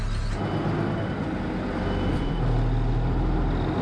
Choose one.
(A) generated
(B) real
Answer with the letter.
B